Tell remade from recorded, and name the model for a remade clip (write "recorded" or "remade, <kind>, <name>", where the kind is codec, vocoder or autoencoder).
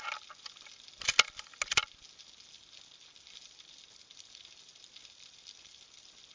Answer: recorded